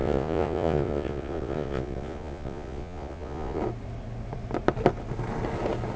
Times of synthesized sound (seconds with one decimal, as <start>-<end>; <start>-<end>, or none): 0.0-3.6